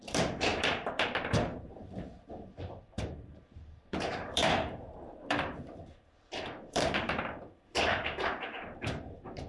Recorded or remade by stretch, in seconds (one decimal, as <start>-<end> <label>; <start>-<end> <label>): 0.0-9.5 remade